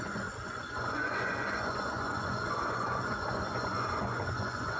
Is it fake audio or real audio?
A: fake